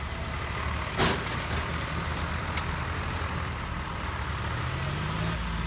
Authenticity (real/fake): real